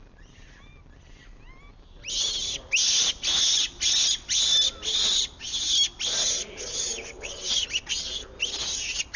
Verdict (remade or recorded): recorded